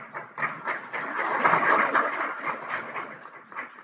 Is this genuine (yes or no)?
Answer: yes